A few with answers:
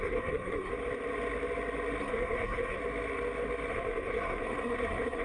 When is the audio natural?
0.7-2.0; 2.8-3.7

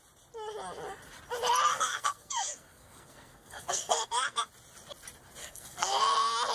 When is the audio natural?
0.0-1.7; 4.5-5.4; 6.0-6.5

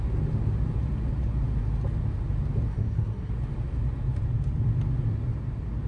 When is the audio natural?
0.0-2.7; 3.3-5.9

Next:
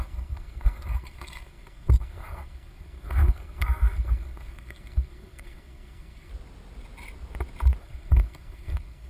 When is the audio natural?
6.3-7.8

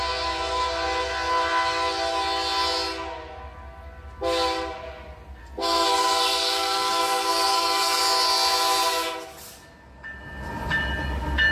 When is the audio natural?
0.0-5.4; 8.0-11.5